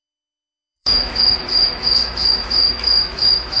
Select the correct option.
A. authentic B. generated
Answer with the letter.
B